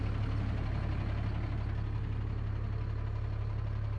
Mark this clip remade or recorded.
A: recorded